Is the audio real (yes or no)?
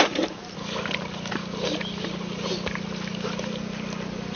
yes